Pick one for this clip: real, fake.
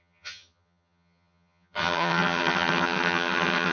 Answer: fake